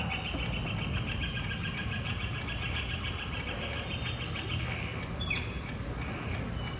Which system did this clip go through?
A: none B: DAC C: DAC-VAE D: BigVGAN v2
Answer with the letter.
A